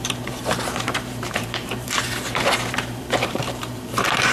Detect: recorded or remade remade